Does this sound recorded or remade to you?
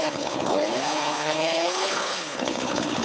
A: remade